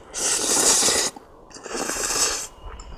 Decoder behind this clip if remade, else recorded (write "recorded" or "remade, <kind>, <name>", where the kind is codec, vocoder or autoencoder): remade, vocoder, BigVGAN v2